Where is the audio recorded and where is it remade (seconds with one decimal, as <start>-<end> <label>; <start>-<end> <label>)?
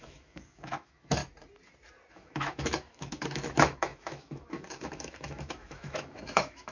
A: 0.0-1.2 remade; 1.2-2.1 recorded; 2.1-6.7 remade